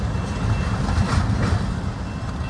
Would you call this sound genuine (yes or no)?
yes